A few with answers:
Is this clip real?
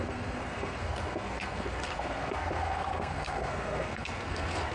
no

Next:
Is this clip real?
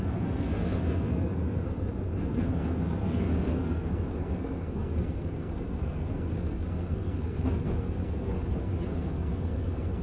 no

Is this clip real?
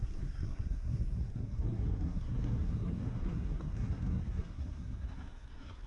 no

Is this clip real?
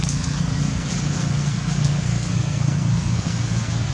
no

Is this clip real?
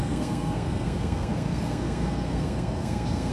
no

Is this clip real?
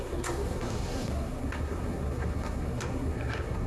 no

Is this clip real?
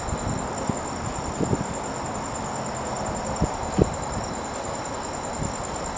yes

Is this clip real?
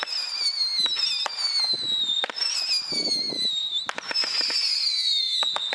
yes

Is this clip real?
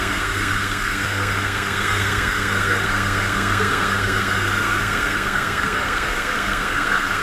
no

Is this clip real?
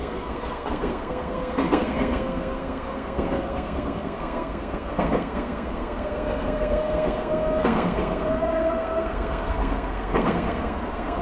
no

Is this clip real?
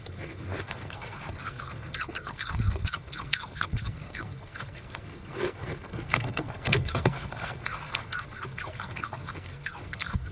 no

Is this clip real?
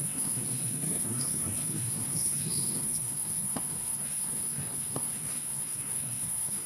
no